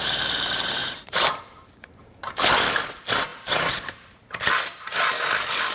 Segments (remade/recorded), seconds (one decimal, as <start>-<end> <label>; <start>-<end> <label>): 0.0-0.8 recorded; 0.8-2.3 remade; 2.3-3.3 recorded; 3.3-4.2 remade; 4.2-5.7 recorded